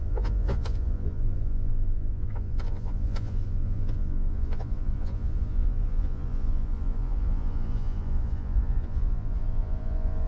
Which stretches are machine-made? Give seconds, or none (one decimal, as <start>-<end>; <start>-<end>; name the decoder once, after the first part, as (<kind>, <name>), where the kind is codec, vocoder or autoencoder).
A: 0.0-10.3 (vocoder, Vocos)